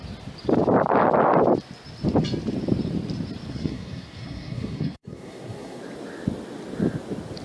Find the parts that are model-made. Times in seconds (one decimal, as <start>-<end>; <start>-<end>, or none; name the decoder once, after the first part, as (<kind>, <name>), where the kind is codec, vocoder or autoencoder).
3.5-5.8 (codec, SNAC)